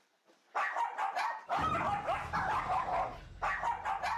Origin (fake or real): real